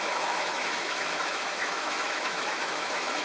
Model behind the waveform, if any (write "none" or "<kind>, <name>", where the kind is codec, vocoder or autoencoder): autoencoder, DAC-VAE